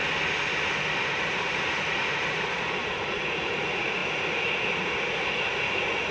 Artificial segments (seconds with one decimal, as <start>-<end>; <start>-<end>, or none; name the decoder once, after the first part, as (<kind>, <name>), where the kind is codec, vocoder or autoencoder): 1.0-6.1 (vocoder, Vocos)